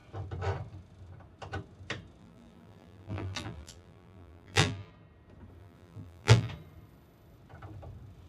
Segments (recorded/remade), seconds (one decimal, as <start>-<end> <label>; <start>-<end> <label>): 0.0-2.2 recorded; 2.2-4.9 remade; 4.9-5.6 recorded; 5.6-6.5 remade; 6.5-8.3 recorded